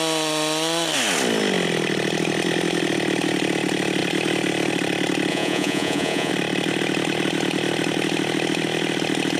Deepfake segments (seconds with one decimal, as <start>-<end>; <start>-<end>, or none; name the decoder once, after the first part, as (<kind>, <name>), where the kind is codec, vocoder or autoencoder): 5.3-6.3 (vocoder, Vocos)